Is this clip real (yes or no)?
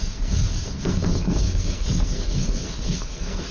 no